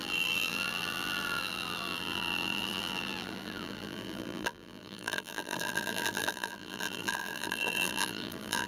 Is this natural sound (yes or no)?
no